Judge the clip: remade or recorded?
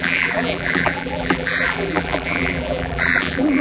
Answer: remade